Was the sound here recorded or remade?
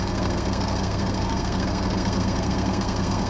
remade